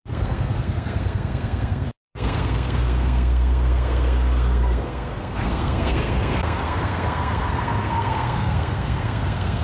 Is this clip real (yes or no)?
no